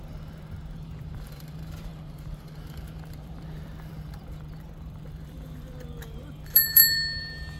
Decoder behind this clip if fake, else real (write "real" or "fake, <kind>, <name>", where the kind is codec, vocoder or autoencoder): fake, vocoder, BigVGAN v2